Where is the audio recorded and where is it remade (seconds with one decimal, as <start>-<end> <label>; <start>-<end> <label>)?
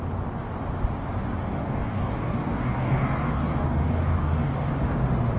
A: 0.0-1.6 recorded; 1.6-4.7 remade; 4.7-5.4 recorded